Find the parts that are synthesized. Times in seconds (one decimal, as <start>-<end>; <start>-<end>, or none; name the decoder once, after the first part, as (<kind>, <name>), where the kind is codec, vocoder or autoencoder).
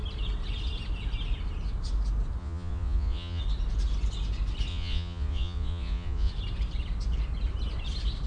2.4-3.4 (vocoder, Vocos); 4.7-6.3